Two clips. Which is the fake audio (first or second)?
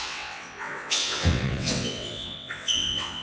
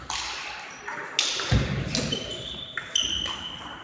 first